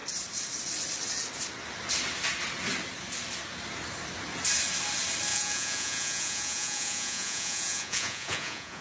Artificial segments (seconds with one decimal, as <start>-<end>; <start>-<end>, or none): 5.3-8.8